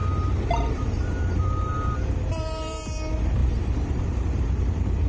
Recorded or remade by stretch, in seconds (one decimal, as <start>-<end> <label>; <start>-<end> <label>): 0.0-0.7 recorded; 0.7-5.1 remade